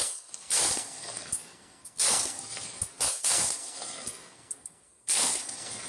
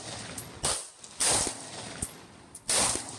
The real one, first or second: second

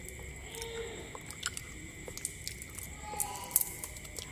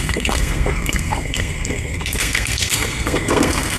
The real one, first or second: first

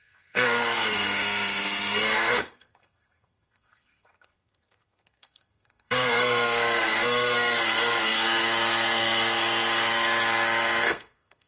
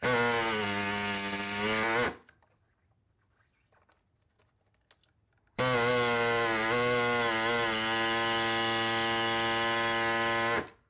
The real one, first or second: second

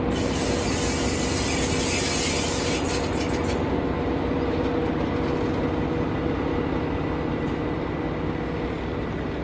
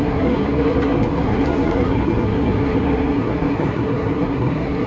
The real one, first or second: first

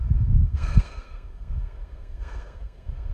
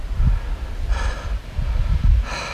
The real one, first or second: second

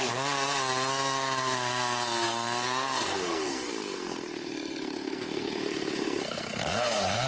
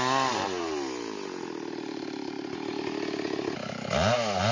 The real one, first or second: second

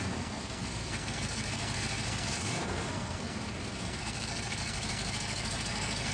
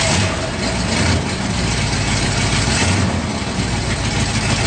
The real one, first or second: second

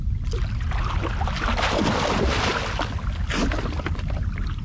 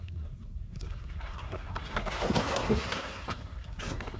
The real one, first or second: first